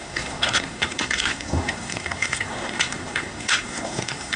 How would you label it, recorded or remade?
remade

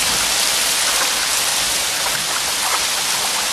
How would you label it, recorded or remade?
recorded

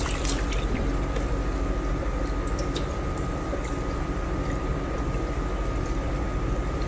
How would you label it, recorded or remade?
remade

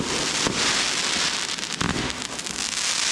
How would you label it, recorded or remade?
recorded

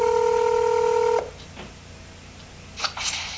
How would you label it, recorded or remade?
recorded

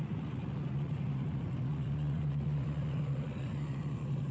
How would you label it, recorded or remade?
remade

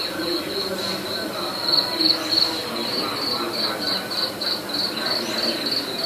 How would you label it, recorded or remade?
recorded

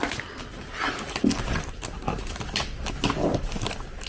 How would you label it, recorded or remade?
recorded